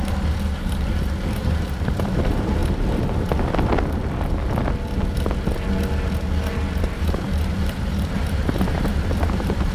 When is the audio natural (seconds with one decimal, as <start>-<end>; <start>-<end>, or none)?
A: 2.6-6.9